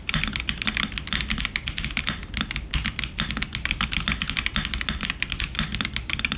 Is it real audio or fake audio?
real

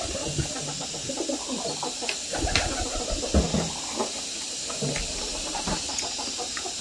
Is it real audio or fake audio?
real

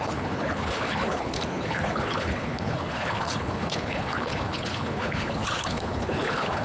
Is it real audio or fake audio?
fake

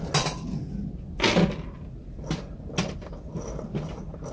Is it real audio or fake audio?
real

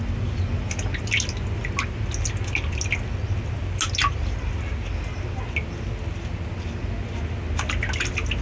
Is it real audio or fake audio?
real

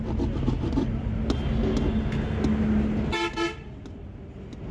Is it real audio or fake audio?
real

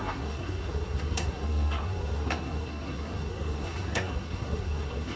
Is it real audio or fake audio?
fake